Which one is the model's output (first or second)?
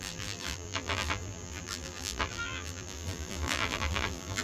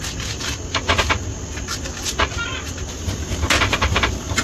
first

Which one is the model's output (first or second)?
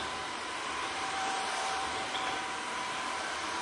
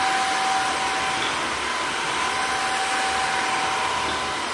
first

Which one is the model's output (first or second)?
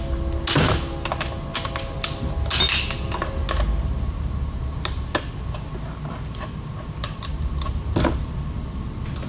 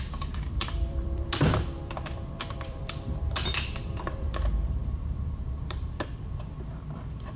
second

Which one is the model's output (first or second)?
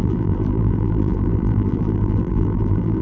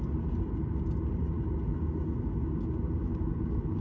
first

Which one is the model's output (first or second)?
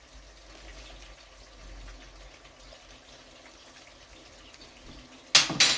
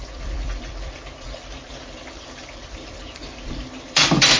second